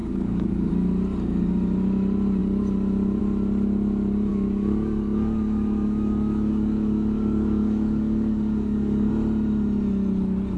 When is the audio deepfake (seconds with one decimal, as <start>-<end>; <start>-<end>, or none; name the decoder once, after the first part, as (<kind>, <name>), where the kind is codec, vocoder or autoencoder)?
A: 0.0-0.7 (codec, DAC); 4.3-9.1